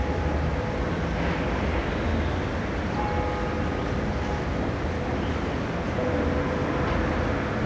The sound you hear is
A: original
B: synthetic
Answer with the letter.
A